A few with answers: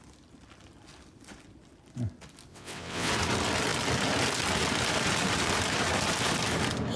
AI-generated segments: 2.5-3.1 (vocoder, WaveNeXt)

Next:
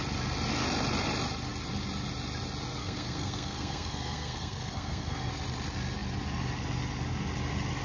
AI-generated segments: 2.8-5.3 (codec, SNAC)

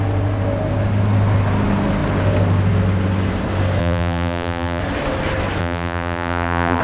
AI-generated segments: 3.8-4.8 (vocoder, BigVGAN v2); 5.6-6.8

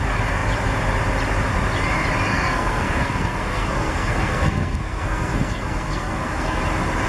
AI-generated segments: 2.3-6.6 (codec, SNAC)

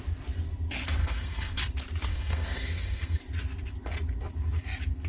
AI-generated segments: 1.0-1.6 (codec, SNAC); 2.1-3.2

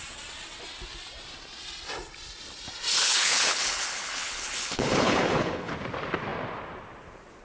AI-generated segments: 2.9-5.7 (codec, HILCodec)

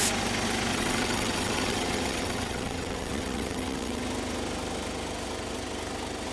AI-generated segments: 0.7-4.0 (vocoder, WaveNeXt)